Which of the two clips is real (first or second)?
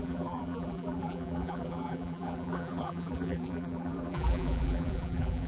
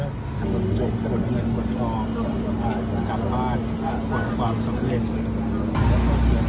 second